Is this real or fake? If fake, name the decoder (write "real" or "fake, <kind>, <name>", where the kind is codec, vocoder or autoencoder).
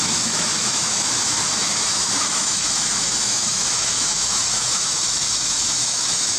fake, autoencoder, DAC-VAE